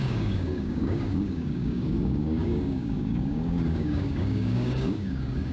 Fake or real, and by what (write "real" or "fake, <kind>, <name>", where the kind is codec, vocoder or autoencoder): fake, codec, DAC